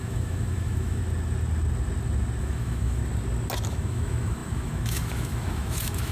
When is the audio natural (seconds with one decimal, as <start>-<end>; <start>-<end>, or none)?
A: 1.0-2.4; 3.0-3.7